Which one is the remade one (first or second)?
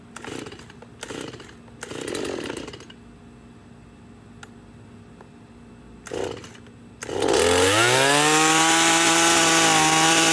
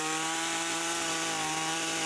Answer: second